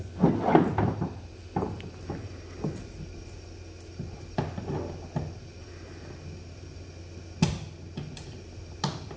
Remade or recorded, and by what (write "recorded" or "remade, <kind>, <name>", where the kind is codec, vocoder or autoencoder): recorded